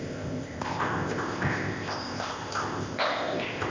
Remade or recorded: remade